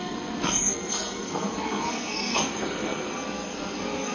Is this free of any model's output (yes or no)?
no